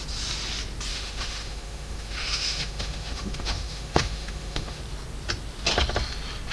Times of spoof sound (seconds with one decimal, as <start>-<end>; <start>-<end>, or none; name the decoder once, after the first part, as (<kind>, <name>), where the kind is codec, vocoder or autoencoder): 0.9-4.8 (autoencoder, DAC-VAE)